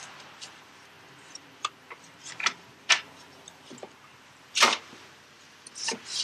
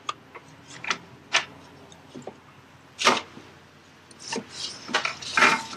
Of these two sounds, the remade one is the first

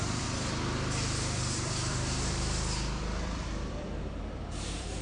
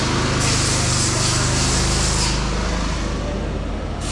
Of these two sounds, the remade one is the first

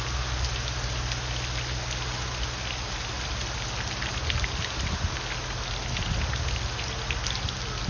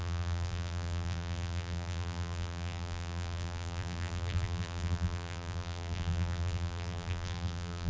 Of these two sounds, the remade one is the second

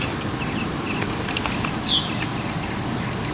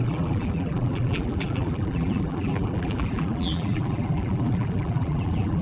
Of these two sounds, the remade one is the second